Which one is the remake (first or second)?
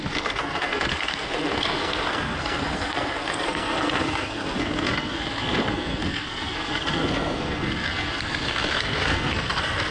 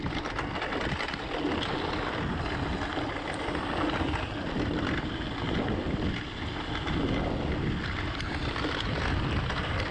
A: first